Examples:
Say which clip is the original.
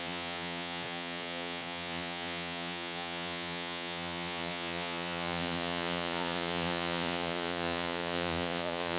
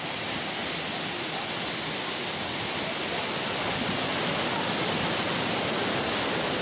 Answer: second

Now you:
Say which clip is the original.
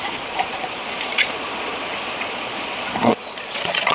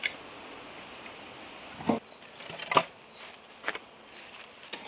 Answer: second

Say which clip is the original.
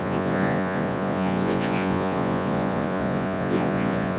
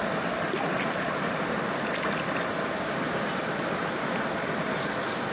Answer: second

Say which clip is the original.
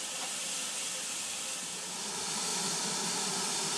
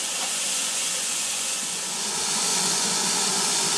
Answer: first